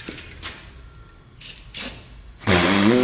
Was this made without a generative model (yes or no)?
yes